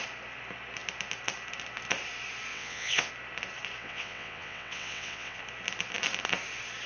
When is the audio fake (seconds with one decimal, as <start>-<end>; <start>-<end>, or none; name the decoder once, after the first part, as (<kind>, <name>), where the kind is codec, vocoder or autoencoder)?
2.5-3.1 (vocoder, WaveNeXt); 3.8-5.4